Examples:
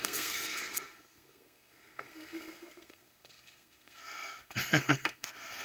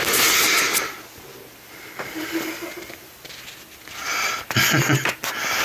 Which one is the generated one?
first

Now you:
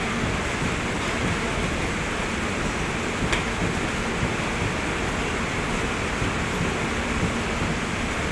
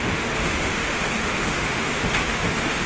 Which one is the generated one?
second